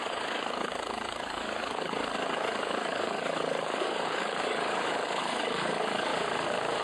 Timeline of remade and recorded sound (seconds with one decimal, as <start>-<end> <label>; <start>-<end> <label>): 0.0-6.1 remade; 6.1-6.8 recorded